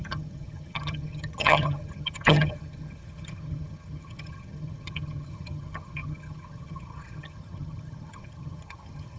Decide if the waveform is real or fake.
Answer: fake